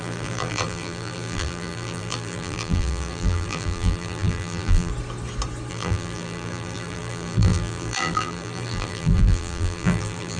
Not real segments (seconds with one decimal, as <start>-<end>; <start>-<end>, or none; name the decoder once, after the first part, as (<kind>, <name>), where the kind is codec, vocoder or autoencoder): 0.0-4.9 (vocoder, BigVGAN v2); 5.7-10.4